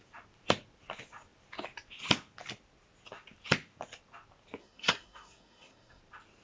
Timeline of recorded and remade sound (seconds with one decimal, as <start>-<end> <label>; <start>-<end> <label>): 0.0-4.6 recorded; 4.6-6.0 remade; 6.0-6.4 recorded